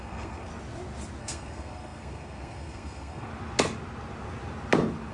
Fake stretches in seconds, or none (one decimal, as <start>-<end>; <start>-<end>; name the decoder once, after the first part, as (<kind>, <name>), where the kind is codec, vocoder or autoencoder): 0.0-0.5 (codec, SNAC); 1.2-3.3